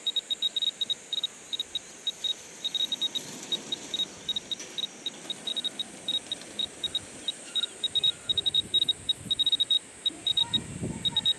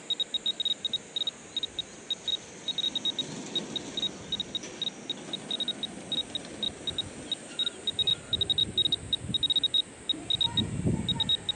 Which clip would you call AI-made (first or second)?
first